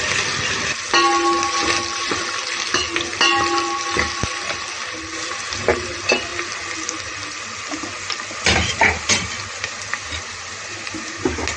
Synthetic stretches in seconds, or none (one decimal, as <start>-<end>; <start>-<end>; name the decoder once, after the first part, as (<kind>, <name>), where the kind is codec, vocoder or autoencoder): none